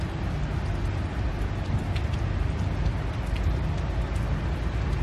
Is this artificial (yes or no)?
no